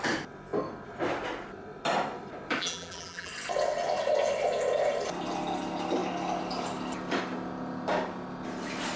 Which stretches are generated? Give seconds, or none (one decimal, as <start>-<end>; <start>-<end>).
2.6-3.3